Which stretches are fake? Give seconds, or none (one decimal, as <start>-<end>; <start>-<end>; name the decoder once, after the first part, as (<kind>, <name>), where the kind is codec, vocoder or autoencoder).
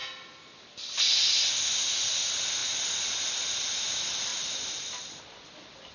none